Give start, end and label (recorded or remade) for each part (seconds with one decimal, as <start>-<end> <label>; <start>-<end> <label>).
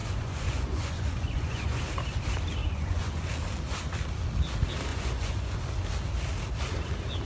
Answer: 0.0-1.8 remade; 1.8-2.6 recorded; 2.6-3.3 remade; 3.3-4.9 recorded; 4.9-5.6 remade; 5.6-7.2 recorded